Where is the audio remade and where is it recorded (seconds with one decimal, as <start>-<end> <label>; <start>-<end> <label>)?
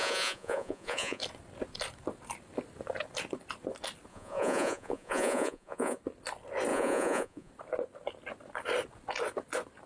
0.0-1.2 remade; 1.2-4.1 recorded; 4.1-6.0 remade; 6.0-6.7 recorded; 6.7-7.5 remade; 7.5-9.9 recorded